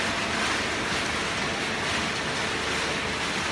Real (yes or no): yes